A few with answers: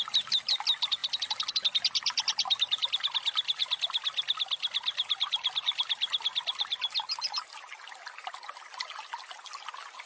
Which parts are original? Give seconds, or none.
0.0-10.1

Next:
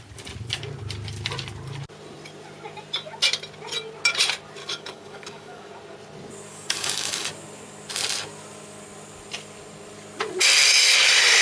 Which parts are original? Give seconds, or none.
0.0-4.6; 5.7-6.5; 7.3-11.4

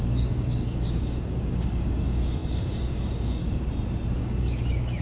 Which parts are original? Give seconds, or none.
3.4-4.2

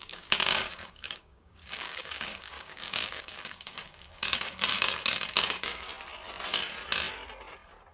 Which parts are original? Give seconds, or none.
5.9-7.9